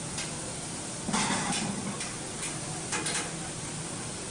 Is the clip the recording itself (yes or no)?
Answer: yes